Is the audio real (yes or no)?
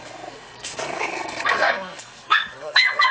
no